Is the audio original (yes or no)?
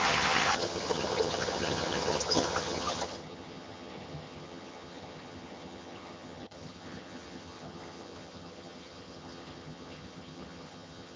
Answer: no